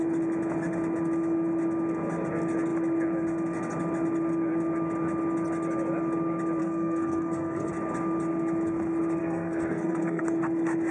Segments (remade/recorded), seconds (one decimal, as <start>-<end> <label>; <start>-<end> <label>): 0.0-6.6 recorded; 6.6-7.7 remade; 7.7-9.2 recorded; 9.2-10.2 remade; 10.2-10.9 recorded